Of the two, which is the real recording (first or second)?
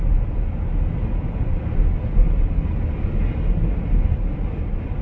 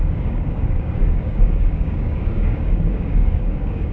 first